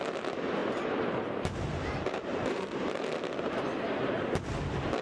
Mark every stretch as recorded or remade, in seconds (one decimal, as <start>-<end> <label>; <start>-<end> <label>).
0.0-0.6 recorded; 0.6-3.6 remade; 3.6-5.0 recorded